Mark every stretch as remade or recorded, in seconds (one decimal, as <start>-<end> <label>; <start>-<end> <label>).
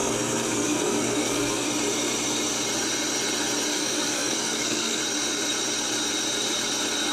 0.0-1.7 remade; 1.7-3.7 recorded; 3.7-5.0 remade; 5.0-7.1 recorded